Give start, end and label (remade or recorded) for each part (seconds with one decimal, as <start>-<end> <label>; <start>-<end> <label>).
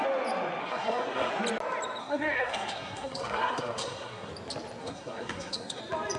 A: 0.0-0.6 recorded; 0.6-1.3 remade; 1.3-2.0 recorded; 2.0-4.3 remade; 4.3-4.8 recorded; 4.8-5.8 remade; 5.8-6.2 recorded